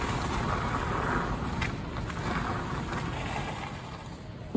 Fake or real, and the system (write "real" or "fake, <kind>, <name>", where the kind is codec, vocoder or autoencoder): real